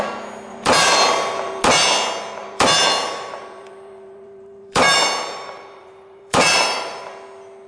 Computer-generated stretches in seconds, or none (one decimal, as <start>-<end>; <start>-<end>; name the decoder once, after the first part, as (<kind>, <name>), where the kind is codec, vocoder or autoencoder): 0.5-1.6 (vocoder, BigVGAN v2); 2.4-7.0